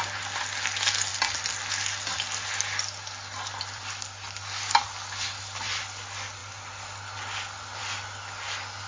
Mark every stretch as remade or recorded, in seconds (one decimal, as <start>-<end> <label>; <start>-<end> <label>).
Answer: 0.0-8.9 recorded